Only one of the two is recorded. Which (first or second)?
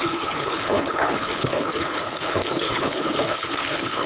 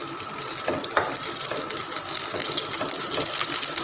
second